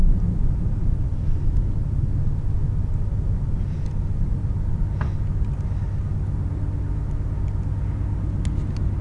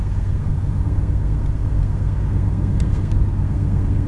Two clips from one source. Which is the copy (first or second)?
second